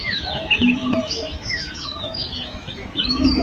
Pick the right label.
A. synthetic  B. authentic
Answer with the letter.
A